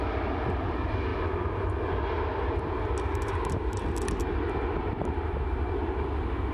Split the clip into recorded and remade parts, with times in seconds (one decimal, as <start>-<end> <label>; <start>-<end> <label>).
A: 0.0-6.5 recorded